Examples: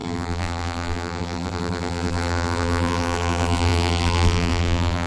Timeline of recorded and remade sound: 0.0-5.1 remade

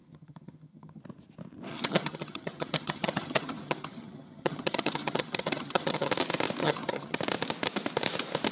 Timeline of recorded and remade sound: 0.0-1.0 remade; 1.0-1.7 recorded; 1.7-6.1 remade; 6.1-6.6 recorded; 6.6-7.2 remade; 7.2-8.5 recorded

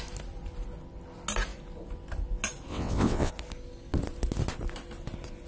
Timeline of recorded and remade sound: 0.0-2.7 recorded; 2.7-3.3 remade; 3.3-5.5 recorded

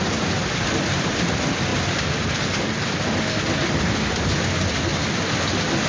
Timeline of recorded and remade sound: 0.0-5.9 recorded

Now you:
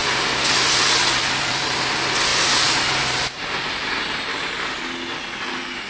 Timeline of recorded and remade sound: 0.0-1.2 recorded; 1.2-1.9 remade; 1.9-2.3 recorded; 2.3-4.8 remade; 4.8-5.9 recorded

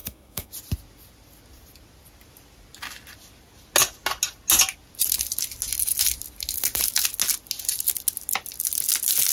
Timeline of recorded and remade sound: 0.0-0.5 remade; 0.5-9.3 recorded